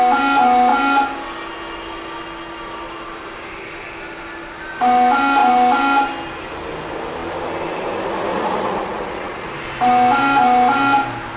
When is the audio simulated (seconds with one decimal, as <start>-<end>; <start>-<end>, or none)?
8.3-9.5